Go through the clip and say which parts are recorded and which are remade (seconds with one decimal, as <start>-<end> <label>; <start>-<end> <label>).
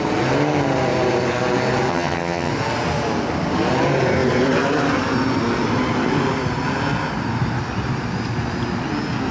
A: 0.0-1.9 recorded; 1.9-2.5 remade; 2.5-9.3 recorded